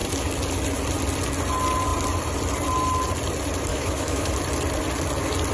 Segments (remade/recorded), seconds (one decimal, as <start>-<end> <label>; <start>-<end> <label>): 0.0-3.7 recorded; 3.7-4.3 remade; 4.3-5.5 recorded

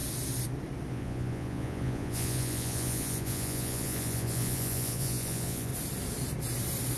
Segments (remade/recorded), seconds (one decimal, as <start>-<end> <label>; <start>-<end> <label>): 0.0-0.9 recorded; 0.9-5.7 remade; 5.7-7.0 recorded

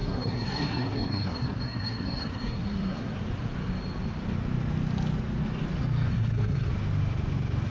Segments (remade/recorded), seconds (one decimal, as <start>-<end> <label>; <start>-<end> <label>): 0.0-3.2 remade; 3.2-6.1 recorded; 6.1-6.7 remade; 6.7-7.7 recorded

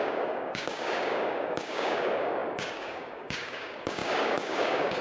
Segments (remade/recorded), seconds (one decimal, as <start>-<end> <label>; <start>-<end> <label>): 0.0-5.0 remade

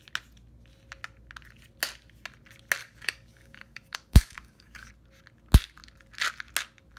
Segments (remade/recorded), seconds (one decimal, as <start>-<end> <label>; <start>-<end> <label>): 0.0-2.8 recorded; 2.8-4.9 remade; 4.9-7.0 recorded

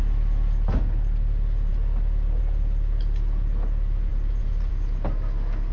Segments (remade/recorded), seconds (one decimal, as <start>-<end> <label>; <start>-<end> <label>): 0.0-4.1 recorded; 4.1-4.7 remade; 4.7-5.7 recorded

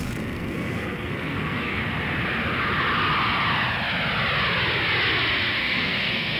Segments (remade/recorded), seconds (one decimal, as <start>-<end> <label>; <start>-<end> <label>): 0.0-1.8 remade; 1.8-5.6 recorded; 5.6-6.4 remade